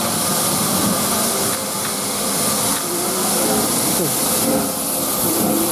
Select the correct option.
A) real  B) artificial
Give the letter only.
A